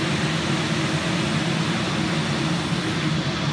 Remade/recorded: recorded